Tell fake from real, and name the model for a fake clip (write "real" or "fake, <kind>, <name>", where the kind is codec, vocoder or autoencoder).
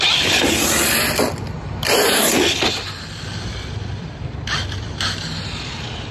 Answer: fake, vocoder, BigVGAN v2